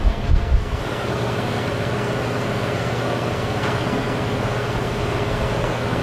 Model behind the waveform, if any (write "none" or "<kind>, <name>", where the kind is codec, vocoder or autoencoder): codec, SNAC